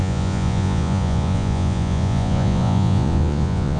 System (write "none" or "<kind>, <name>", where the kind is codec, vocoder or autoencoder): vocoder, Vocos